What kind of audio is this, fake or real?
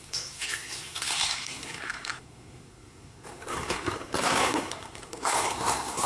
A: fake